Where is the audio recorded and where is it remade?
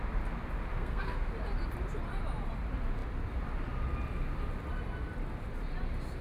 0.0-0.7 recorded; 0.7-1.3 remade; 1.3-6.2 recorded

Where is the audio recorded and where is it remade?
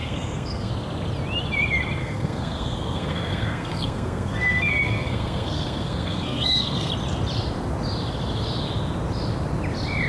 0.0-0.7 remade; 0.7-2.0 recorded; 2.0-6.9 remade; 6.9-10.1 recorded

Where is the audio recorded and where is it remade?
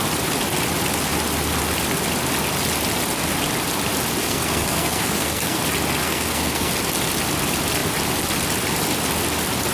0.0-4.2 recorded; 4.2-5.6 remade; 5.6-6.0 recorded; 6.0-6.7 remade; 6.7-9.7 recorded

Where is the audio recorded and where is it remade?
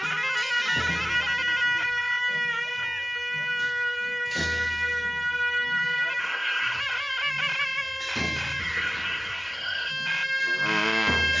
0.0-6.2 recorded; 6.2-6.8 remade; 6.8-8.6 recorded; 8.6-9.9 remade; 9.9-11.4 recorded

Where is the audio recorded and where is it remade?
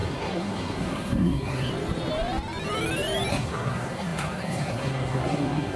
0.0-1.7 remade; 1.7-3.3 recorded; 3.3-5.8 remade